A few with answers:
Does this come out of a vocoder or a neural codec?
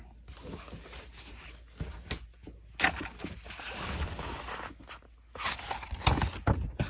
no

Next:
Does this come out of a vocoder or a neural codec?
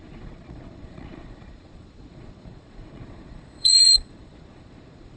yes